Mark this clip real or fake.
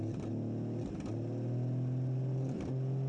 real